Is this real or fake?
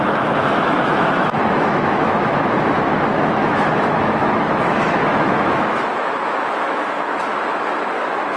fake